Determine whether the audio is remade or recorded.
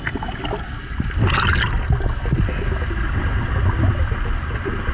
recorded